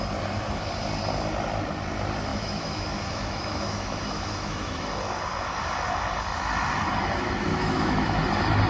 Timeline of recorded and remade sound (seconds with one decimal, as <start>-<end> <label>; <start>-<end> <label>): 0.0-2.3 recorded; 2.3-4.9 remade; 4.9-7.5 recorded; 7.5-8.2 remade; 8.2-8.7 recorded

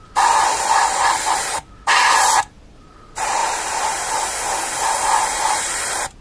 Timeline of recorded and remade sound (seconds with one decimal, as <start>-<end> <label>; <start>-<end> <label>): 0.0-6.2 recorded

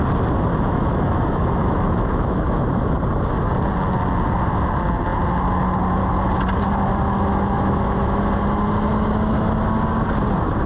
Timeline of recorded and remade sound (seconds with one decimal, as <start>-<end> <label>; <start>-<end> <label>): 0.0-0.5 recorded; 0.5-2.9 remade; 2.9-7.3 recorded; 7.3-8.2 remade; 8.2-8.9 recorded; 8.9-9.6 remade; 9.6-10.7 recorded

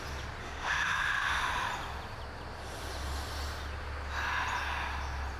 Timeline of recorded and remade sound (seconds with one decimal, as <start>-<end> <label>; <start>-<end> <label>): 0.0-0.4 recorded; 0.4-1.5 remade; 1.5-5.4 recorded

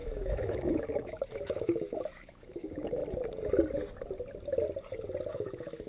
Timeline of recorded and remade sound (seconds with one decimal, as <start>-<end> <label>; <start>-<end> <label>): 0.0-3.0 remade; 3.0-5.3 recorded; 5.3-5.9 remade